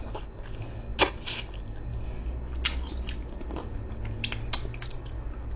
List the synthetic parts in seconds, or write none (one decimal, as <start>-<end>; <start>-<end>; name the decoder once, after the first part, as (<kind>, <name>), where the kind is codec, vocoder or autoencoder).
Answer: none